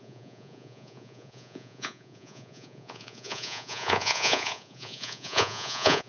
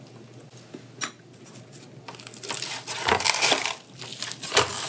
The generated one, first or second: first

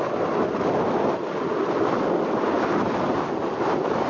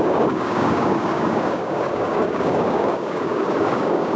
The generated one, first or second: second